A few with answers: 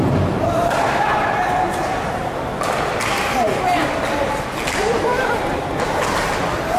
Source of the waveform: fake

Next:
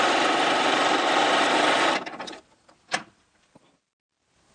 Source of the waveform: real